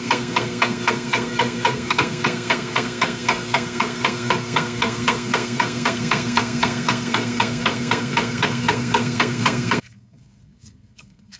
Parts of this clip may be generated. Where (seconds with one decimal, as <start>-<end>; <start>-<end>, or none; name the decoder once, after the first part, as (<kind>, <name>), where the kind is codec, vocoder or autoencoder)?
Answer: 0.0-11.4 (codec, SNAC)